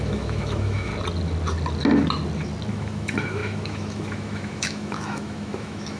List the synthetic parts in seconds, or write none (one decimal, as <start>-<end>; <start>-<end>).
0.0-0.9; 2.7-6.0